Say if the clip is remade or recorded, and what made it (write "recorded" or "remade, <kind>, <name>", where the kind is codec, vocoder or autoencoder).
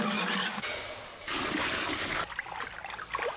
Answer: recorded